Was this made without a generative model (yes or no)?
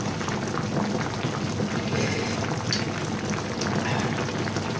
yes